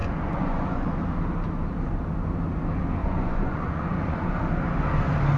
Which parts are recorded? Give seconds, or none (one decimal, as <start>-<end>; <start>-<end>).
0.9-3.0; 4.3-5.4